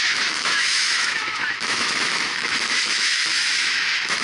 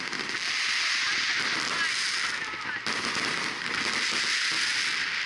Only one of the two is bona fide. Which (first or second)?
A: second